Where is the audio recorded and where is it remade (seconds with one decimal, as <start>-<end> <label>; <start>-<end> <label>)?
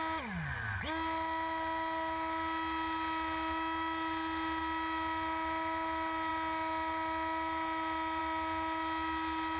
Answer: 0.0-9.6 recorded